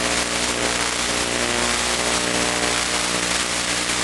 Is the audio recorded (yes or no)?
yes